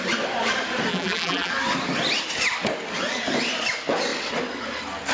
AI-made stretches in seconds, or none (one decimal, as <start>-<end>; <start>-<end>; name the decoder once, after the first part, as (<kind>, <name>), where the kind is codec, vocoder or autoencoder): 0.9-1.5 (vocoder, BigVGAN v2)